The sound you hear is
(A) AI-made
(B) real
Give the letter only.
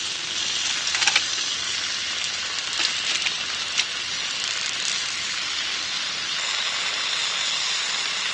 B